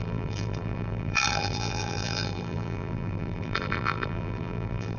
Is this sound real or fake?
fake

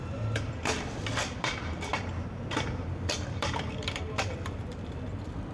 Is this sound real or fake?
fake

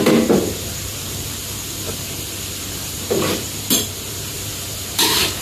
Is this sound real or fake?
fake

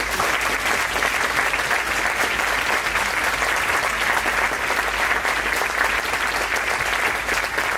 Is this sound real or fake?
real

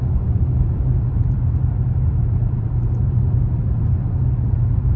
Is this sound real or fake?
fake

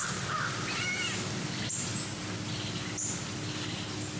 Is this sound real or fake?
real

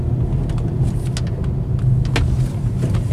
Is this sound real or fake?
real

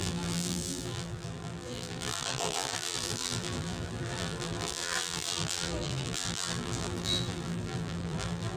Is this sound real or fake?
fake